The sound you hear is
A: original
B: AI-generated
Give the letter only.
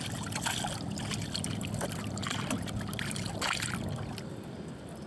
A